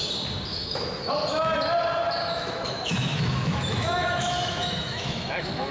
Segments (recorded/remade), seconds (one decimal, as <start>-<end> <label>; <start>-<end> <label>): 0.0-0.5 recorded; 0.5-1.1 remade; 1.1-2.2 recorded; 2.2-5.7 remade